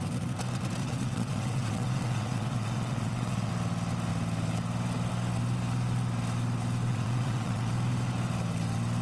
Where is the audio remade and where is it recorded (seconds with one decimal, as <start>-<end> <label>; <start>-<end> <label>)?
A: 0.0-0.8 recorded; 0.8-3.5 remade; 3.5-6.9 recorded; 6.9-7.7 remade; 7.7-9.0 recorded